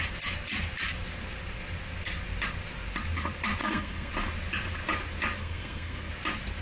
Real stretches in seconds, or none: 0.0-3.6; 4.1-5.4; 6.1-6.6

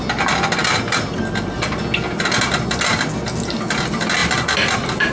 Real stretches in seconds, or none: 0.0-5.1

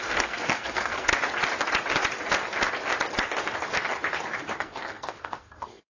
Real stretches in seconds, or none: 1.1-4.6

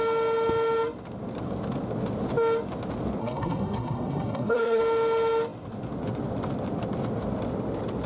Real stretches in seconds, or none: 0.0-3.2; 4.8-8.1

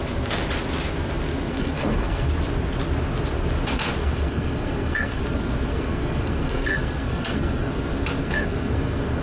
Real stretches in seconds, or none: 0.0-1.5; 2.3-4.0; 5.2-5.7; 7.7-8.2

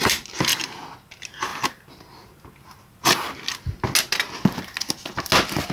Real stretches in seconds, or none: 0.0-5.7

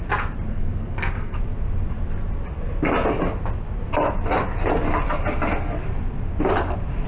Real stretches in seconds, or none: 0.0-0.5; 1.4-7.1

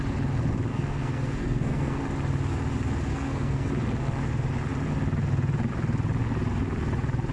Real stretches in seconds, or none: 0.0-0.7; 2.0-3.1; 3.7-7.3